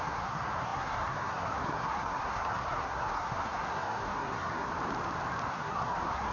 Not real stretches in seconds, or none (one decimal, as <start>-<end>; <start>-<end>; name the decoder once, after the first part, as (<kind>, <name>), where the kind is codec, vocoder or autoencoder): 0.0-4.7 (codec, SNAC); 5.5-6.3